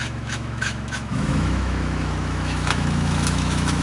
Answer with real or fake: fake